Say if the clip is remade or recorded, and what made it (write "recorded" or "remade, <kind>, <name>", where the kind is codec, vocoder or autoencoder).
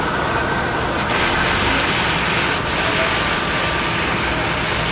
recorded